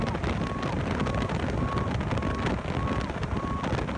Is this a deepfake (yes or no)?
no